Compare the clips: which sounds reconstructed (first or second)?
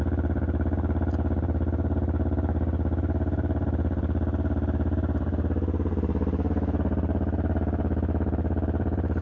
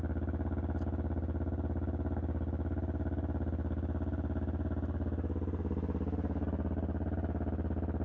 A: first